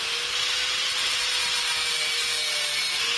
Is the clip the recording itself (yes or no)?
yes